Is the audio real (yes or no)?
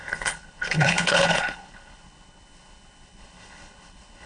no